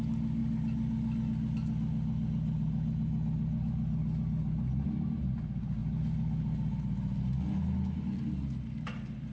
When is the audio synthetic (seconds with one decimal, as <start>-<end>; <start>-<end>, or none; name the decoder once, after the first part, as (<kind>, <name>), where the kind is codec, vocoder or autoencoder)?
none